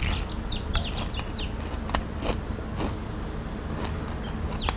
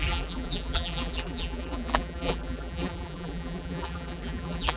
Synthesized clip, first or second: second